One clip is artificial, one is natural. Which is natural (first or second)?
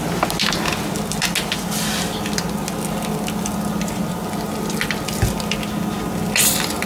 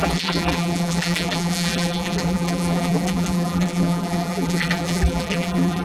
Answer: first